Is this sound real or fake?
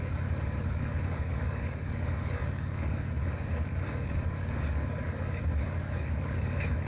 fake